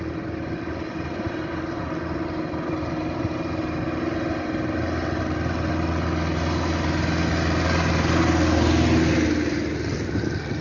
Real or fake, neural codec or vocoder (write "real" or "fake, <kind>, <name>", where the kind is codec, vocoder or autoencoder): real